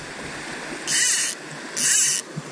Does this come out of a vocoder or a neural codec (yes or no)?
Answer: no